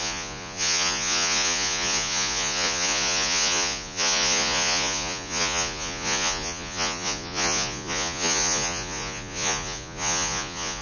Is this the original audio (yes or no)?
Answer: no